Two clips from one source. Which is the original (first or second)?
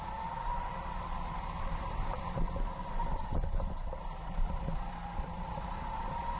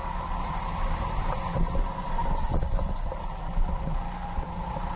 second